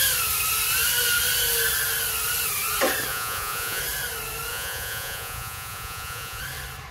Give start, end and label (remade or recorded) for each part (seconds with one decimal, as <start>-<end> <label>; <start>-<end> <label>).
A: 0.0-3.1 recorded; 3.1-3.8 remade; 3.8-4.5 recorded; 4.5-6.4 remade; 6.4-6.9 recorded